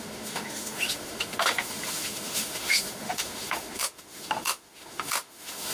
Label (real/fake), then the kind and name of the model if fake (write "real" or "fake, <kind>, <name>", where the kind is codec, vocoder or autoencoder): fake, autoencoder, DAC-VAE